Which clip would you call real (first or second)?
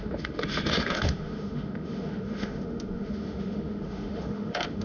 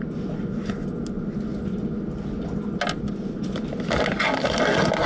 second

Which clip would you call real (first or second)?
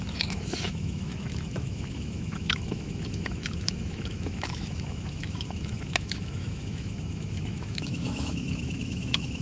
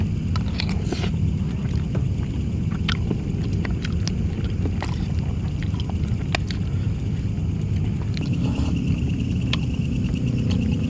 second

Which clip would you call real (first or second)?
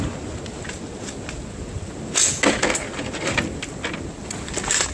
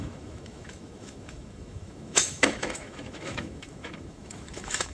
first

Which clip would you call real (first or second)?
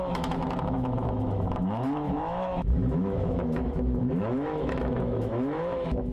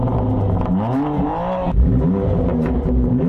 second